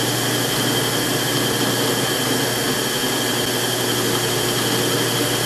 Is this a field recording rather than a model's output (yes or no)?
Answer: yes